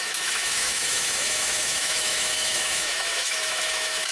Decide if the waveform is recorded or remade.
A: remade